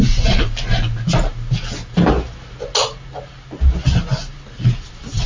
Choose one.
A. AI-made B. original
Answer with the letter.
B